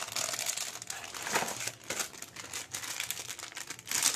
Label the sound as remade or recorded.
recorded